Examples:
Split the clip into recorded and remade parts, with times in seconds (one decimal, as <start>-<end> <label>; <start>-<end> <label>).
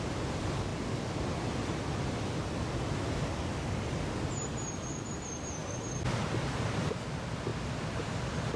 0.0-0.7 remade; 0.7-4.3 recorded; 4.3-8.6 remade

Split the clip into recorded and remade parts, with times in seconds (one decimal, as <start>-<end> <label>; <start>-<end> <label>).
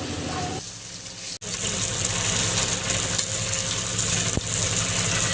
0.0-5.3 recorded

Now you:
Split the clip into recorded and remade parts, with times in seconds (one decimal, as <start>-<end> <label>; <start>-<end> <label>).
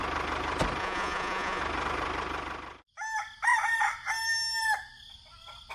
0.0-0.8 recorded; 0.8-1.6 remade; 1.6-5.7 recorded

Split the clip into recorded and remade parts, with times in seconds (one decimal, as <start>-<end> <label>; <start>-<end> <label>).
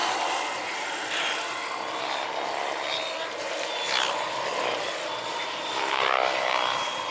0.0-7.1 recorded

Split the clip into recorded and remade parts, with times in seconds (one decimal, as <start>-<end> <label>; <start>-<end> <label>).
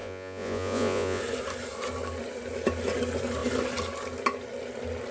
0.0-1.2 remade; 1.2-5.1 recorded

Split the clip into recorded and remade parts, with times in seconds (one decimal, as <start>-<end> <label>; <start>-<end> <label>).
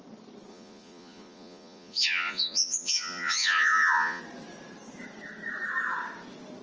0.0-0.5 recorded; 0.5-4.2 remade; 4.2-6.6 recorded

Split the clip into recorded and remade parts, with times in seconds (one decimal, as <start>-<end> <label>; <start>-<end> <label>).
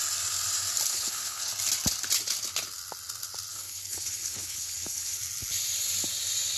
0.0-0.9 recorded; 0.9-1.5 remade; 1.5-3.5 recorded; 3.5-5.2 remade; 5.2-6.6 recorded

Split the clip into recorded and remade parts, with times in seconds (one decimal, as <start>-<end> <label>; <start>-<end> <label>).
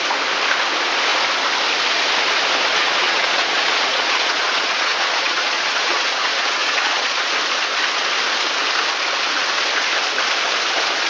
0.0-2.7 recorded; 2.7-7.3 remade; 7.3-11.1 recorded